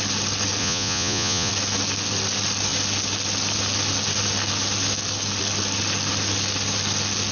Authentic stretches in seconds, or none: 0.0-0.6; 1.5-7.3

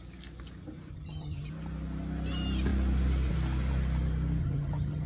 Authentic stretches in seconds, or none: 0.0-0.9; 1.5-4.4

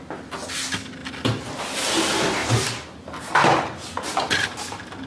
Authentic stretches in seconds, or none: 0.0-5.1

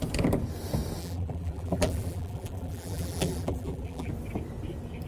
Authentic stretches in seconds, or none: 0.0-1.0; 4.1-5.1

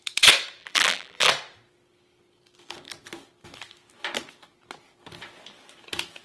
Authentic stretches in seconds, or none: 0.0-0.6; 1.3-6.2